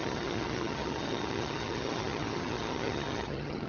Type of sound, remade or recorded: remade